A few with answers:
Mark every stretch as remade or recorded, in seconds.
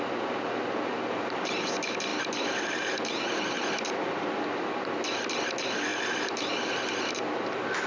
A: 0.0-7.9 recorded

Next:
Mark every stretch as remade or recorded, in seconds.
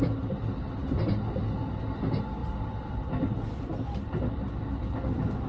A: 0.0-5.5 recorded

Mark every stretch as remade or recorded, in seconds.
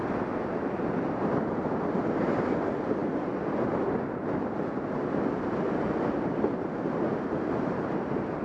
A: 0.0-8.4 recorded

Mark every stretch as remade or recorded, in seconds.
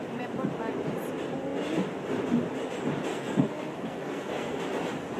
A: 0.0-3.1 recorded; 3.1-4.6 remade; 4.6-5.2 recorded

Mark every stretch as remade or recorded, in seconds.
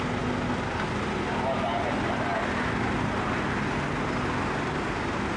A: 0.0-5.4 recorded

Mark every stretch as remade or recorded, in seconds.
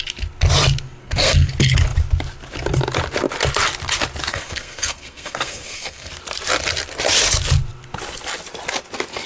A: 0.0-1.0 recorded; 1.0-1.5 remade; 1.5-4.3 recorded; 4.3-6.1 remade; 6.1-9.3 recorded